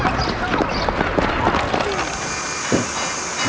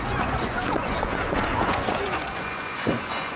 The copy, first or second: second